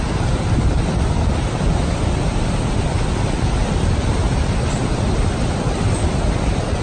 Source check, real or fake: real